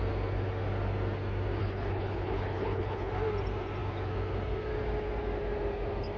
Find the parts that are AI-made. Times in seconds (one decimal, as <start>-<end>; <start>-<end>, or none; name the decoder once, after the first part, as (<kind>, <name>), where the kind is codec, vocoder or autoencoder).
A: 1.6-3.1 (codec, HILCodec)